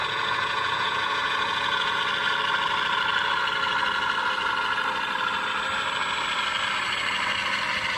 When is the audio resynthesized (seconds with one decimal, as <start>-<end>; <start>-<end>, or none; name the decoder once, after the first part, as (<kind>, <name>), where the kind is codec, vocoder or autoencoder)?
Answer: 0.0-2.0 (vocoder, Vocos)